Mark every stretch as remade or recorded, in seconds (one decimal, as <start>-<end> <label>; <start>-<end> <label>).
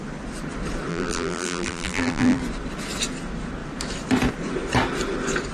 0.0-0.9 recorded; 0.9-2.4 remade; 2.4-5.5 recorded